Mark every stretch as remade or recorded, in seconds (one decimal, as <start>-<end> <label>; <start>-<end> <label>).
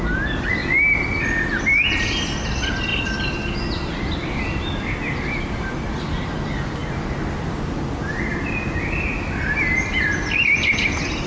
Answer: 0.0-11.3 recorded